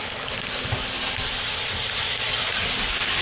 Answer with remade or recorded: recorded